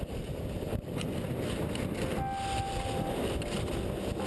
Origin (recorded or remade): recorded